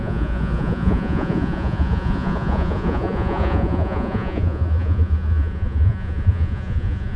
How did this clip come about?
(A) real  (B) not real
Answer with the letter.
B